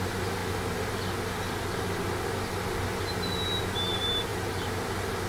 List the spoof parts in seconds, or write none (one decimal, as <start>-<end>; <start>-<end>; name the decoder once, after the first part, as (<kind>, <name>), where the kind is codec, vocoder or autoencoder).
none